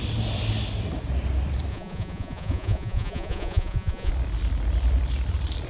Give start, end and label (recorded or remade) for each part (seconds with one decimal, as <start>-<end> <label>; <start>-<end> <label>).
0.0-1.7 recorded; 1.7-4.1 remade; 4.1-5.7 recorded